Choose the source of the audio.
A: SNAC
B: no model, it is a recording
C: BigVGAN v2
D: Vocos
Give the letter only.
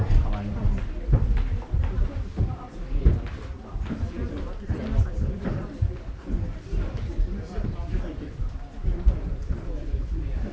C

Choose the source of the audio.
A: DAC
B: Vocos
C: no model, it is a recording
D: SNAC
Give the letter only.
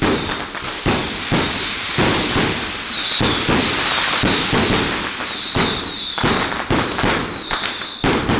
C